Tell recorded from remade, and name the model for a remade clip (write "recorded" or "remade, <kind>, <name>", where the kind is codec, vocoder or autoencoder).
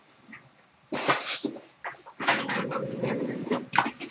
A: recorded